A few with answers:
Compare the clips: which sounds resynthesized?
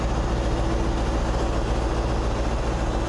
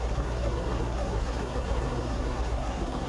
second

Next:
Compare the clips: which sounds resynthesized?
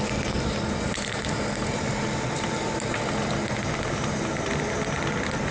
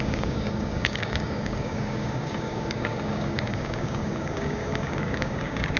second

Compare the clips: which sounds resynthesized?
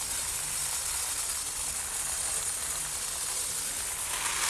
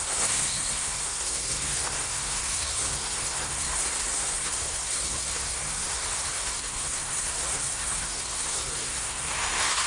second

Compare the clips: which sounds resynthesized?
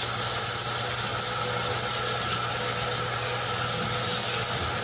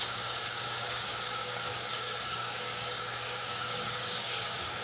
second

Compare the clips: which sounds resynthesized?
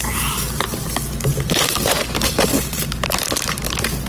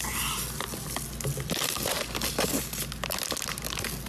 first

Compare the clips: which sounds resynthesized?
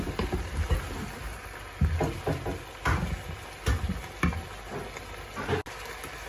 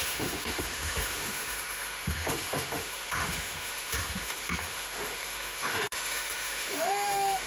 second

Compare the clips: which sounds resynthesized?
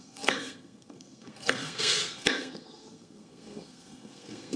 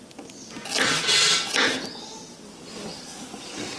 first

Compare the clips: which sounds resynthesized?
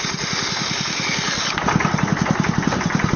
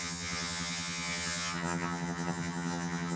second